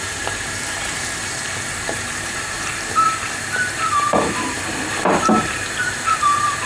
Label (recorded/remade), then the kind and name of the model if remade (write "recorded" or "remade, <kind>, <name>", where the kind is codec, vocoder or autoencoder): remade, vocoder, BigVGAN v2